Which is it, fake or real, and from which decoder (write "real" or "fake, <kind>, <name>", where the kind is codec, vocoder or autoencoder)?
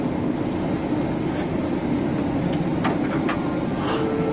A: real